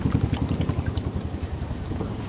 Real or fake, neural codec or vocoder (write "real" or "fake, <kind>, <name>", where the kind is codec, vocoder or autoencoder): real